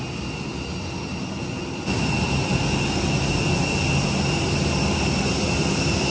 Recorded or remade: recorded